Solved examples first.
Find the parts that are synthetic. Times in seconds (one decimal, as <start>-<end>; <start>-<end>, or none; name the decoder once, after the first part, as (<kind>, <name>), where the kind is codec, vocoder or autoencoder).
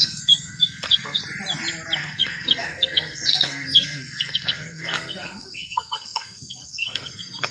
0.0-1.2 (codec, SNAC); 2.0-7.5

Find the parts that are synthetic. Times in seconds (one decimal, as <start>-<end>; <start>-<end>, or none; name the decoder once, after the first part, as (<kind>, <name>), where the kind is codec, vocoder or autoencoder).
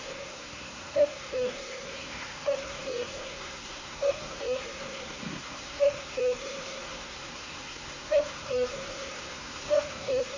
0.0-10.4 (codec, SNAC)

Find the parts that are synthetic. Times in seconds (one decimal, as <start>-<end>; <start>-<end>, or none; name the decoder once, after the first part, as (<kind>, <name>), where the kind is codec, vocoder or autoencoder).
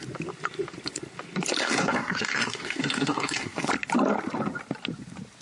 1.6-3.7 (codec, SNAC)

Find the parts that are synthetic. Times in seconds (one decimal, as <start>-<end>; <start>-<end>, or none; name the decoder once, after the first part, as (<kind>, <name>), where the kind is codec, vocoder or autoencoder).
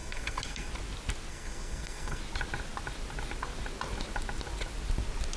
0.0-0.7 (codec, SNAC); 1.3-2.2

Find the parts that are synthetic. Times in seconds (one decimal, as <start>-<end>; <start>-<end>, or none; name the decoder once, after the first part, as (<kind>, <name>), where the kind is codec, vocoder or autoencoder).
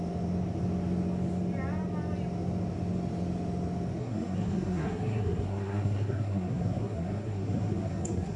4.0-8.4 (codec, SNAC)